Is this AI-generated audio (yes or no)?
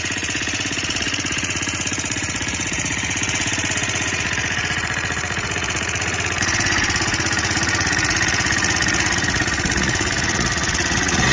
yes